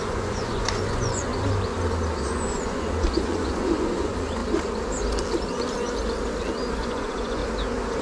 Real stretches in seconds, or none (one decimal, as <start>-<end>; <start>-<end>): 1.3-2.3; 4.4-6.7; 7.4-8.0